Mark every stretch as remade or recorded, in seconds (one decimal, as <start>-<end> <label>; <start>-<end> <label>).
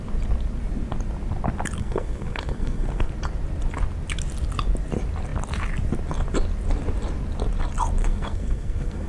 0.0-1.8 recorded; 1.8-3.1 remade; 3.1-8.0 recorded; 8.0-9.1 remade